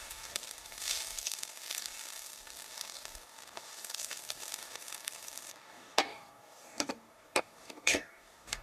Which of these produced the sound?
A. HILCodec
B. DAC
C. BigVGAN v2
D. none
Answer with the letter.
B